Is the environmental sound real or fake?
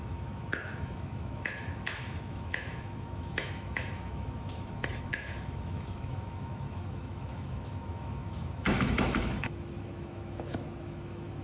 fake